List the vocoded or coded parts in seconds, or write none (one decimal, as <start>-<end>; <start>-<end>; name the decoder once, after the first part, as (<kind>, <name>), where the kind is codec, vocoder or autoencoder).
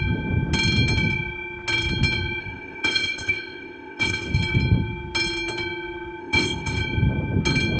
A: 2.4-4.4 (codec, ZipCodec); 6.2-6.8